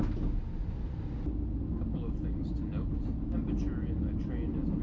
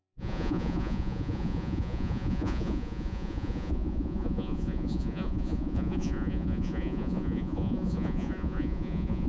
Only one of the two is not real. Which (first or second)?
second